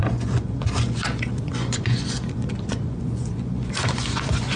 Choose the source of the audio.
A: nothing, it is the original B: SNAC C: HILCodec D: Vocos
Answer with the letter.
D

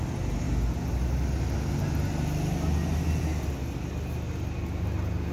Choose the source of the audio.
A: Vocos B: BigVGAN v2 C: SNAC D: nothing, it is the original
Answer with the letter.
D